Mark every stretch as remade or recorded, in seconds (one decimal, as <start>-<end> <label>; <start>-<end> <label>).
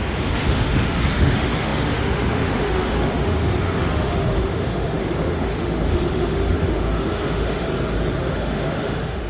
0.0-7.7 remade; 7.7-8.2 recorded; 8.2-9.3 remade